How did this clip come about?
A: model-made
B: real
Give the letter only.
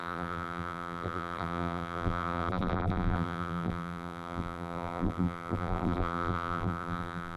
A